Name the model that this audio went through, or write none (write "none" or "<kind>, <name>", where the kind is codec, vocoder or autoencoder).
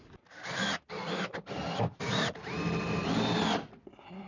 none